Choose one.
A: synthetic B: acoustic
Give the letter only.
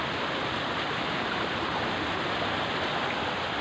B